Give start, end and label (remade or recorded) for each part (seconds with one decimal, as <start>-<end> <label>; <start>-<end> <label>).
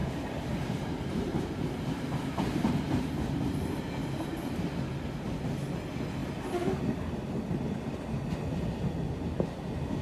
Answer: 0.0-3.8 remade; 3.8-10.0 recorded